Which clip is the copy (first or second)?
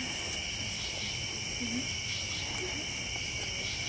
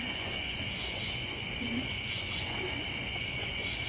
second